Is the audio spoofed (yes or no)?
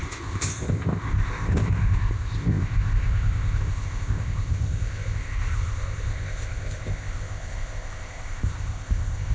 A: yes